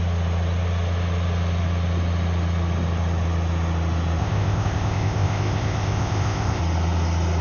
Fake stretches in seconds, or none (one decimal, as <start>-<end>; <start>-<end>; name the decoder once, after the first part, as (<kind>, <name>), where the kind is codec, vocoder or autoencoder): 4.2-6.6 (codec, ZipCodec)